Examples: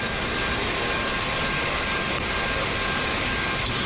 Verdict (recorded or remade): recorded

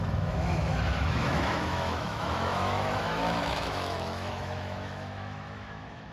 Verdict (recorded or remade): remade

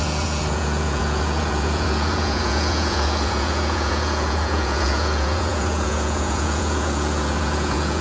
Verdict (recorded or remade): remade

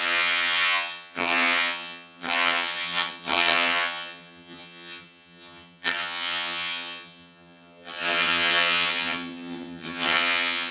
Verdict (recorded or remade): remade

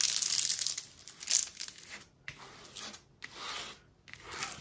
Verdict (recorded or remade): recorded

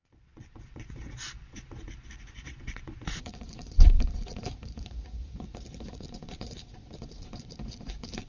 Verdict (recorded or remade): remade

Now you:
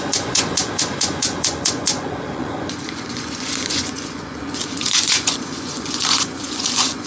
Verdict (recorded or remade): remade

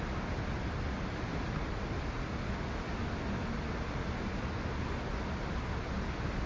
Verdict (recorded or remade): recorded